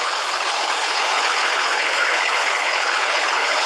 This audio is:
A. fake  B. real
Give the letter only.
A